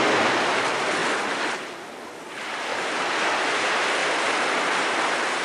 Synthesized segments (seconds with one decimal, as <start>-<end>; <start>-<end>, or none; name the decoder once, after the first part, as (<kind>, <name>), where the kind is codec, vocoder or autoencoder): none